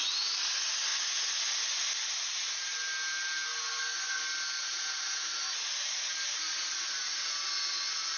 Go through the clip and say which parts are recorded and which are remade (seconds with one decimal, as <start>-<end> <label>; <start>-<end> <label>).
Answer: 0.0-3.5 recorded; 3.5-4.2 remade; 4.2-8.2 recorded